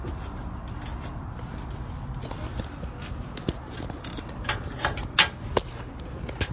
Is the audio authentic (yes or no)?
yes